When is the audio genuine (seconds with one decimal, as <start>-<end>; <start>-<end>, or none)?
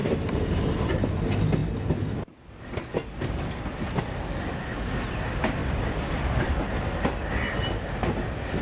0.9-5.6; 7.2-8.6